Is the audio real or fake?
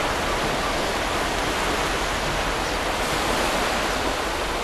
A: real